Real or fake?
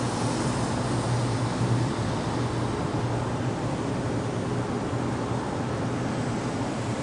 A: real